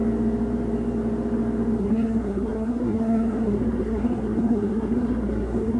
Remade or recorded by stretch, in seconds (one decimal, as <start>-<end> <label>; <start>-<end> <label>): 0.0-1.8 recorded; 1.8-5.8 remade